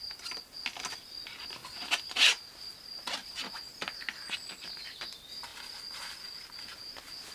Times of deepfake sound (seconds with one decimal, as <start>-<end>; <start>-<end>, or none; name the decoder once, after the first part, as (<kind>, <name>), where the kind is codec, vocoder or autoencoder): none